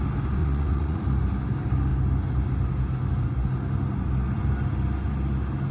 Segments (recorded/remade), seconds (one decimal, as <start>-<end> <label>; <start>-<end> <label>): 0.0-0.4 recorded; 0.4-1.0 remade; 1.0-5.7 recorded